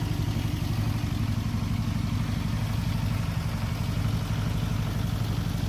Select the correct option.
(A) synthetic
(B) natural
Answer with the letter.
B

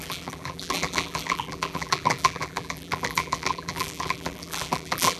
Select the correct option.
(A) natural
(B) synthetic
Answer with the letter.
B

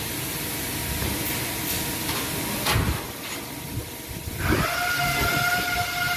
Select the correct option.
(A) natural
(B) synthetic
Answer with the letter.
A